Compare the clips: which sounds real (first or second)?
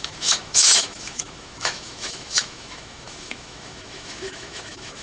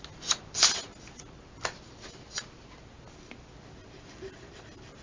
second